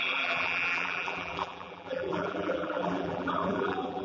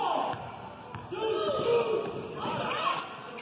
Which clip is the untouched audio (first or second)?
second